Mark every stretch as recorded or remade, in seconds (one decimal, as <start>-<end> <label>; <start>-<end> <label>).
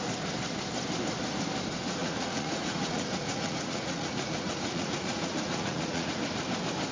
0.0-2.0 recorded; 2.0-6.1 remade; 6.1-6.9 recorded